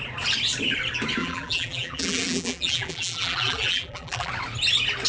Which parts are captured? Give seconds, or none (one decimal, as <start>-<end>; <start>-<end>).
0.0-1.2; 4.3-5.1